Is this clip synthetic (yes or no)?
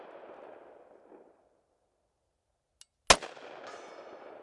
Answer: no